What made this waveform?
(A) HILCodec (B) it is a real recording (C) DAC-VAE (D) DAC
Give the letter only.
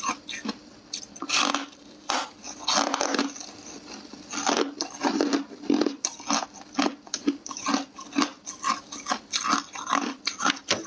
B